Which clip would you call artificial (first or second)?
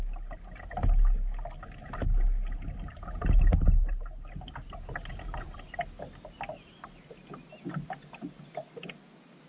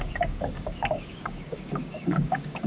second